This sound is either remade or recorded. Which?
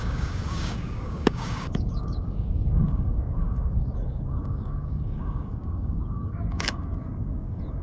remade